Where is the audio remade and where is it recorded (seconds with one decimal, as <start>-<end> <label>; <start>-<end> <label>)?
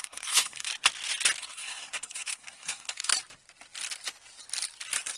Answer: 0.0-0.7 remade; 0.7-1.4 recorded; 1.4-3.1 remade; 3.1-5.2 recorded